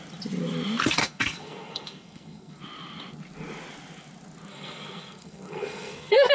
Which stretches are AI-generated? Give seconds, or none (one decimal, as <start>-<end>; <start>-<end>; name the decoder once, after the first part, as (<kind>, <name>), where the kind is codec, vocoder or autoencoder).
1.0-2.6 (codec, SNAC); 4.5-6.3

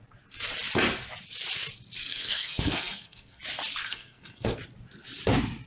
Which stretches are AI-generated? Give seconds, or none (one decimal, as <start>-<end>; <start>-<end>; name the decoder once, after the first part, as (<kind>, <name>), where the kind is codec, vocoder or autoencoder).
2.0-3.4 (codec, SNAC); 3.8-4.6

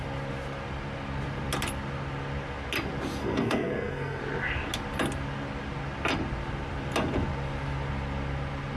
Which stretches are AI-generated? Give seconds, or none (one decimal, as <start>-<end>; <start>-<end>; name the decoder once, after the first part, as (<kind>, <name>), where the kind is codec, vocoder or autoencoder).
3.2-4.2 (codec, SNAC)

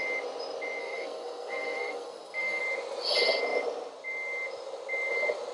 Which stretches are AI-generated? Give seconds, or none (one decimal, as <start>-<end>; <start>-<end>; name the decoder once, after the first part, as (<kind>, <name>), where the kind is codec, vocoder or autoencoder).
0.8-2.6 (codec, SNAC)

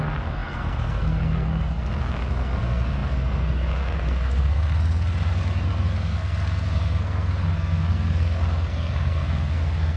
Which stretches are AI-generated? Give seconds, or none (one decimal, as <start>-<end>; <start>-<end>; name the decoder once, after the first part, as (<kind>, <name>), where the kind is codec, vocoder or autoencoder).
0.0-10.0 (codec, SNAC)

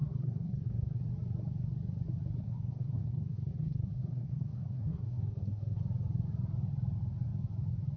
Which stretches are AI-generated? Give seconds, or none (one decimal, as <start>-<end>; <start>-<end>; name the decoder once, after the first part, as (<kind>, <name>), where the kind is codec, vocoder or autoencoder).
0.0-1.0 (codec, SNAC); 2.4-5.8